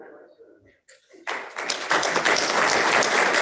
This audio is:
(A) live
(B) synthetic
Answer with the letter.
A